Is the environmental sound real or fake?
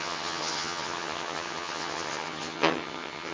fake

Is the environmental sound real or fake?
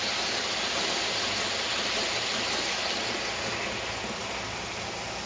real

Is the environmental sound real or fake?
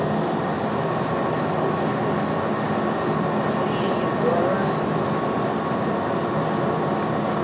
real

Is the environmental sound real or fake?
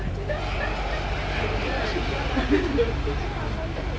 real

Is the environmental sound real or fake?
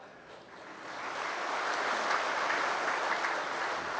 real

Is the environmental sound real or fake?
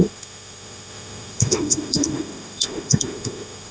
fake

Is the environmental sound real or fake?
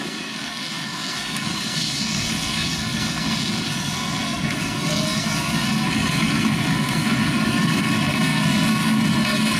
fake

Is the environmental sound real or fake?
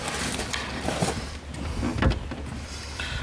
real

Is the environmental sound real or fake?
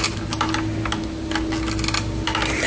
real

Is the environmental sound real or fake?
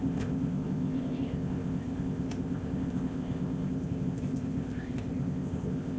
fake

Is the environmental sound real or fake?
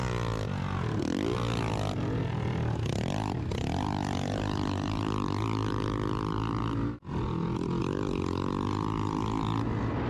real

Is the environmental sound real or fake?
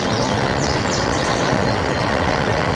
fake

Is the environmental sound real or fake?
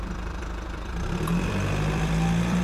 fake